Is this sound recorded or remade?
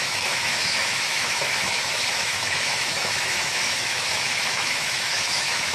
remade